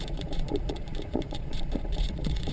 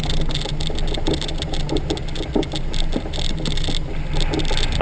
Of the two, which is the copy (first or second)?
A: first